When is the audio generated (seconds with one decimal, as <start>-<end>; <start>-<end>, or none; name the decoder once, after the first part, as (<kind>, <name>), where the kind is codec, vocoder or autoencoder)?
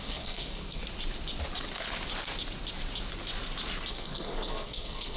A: 0.0-0.8 (codec, SNAC); 3.9-5.2